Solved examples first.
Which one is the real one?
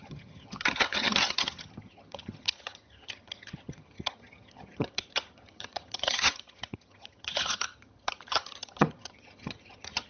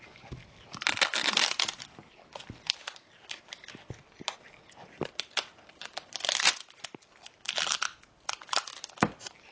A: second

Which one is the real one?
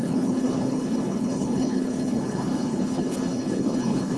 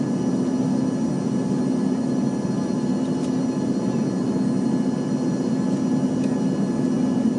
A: second